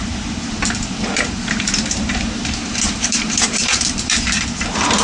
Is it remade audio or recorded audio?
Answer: remade